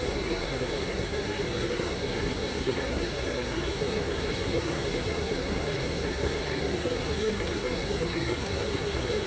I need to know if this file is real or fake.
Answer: fake